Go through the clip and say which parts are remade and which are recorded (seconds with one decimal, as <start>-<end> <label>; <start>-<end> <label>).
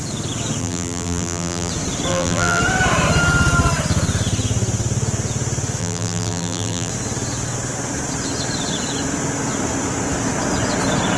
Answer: 0.0-0.6 recorded; 0.6-1.7 remade; 1.7-2.1 recorded; 2.1-2.6 remade; 2.6-5.8 recorded; 5.8-6.9 remade; 6.9-11.2 recorded